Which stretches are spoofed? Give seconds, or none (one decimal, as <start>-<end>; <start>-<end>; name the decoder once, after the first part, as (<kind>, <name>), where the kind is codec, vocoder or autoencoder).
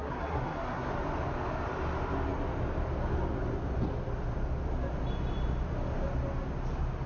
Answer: 0.0-0.9 (codec, SNAC)